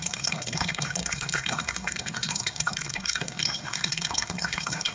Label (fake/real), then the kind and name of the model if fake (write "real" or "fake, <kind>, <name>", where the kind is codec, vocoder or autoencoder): fake, codec, SNAC